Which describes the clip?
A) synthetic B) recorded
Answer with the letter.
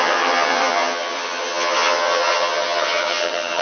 A